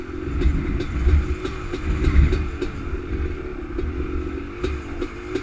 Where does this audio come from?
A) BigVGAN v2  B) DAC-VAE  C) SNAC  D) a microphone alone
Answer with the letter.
D